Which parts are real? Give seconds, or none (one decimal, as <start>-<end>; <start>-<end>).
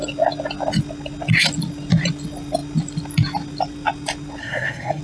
0.0-4.4